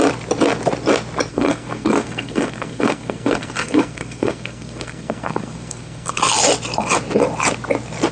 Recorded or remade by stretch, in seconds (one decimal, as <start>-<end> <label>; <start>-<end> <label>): 0.0-1.3 recorded; 1.3-6.2 remade; 6.2-8.1 recorded